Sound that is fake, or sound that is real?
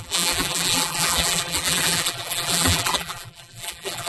fake